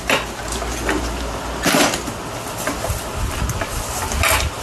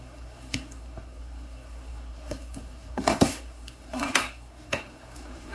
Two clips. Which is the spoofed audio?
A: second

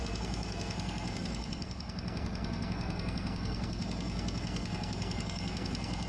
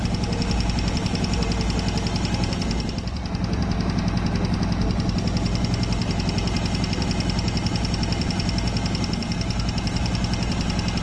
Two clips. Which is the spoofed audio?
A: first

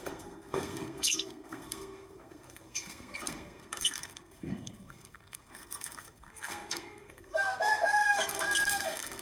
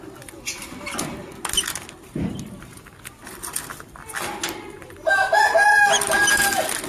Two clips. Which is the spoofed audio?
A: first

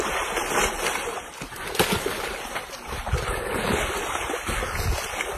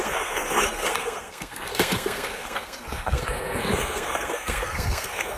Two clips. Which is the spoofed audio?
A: second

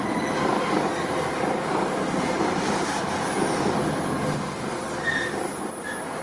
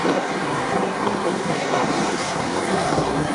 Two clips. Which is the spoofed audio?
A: second